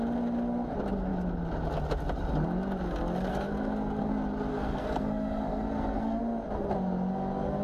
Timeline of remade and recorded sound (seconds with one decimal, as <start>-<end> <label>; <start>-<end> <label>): 0.0-3.3 recorded; 3.3-4.1 remade; 4.1-4.5 recorded; 4.5-6.2 remade; 6.2-7.6 recorded